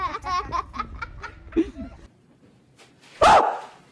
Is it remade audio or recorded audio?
recorded